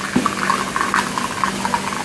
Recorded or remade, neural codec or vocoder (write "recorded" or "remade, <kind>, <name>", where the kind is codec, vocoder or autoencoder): recorded